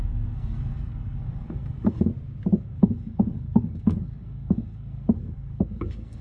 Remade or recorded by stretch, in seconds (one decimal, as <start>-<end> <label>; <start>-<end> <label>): 0.0-2.1 remade; 2.1-2.6 recorded; 2.6-6.2 remade